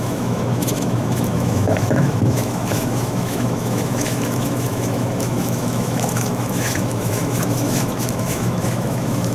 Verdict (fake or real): fake